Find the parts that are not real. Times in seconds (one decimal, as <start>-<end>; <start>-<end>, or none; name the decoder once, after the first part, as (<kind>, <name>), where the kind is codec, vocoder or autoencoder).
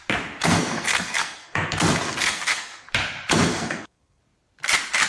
0.4-2.9 (codec, SNAC); 3.5-4.2